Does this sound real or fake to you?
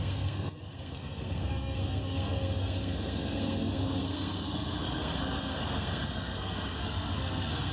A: fake